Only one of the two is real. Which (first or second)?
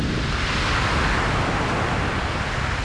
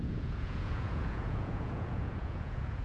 first